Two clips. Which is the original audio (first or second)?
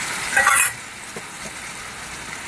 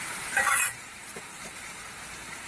first